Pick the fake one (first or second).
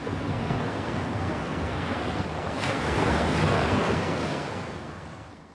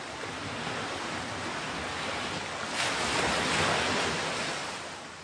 first